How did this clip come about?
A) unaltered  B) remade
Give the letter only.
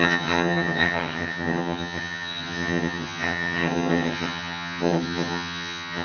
B